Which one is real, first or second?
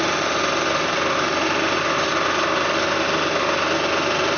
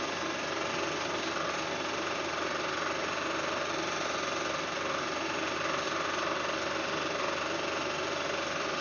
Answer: first